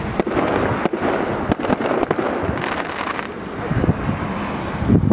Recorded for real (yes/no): yes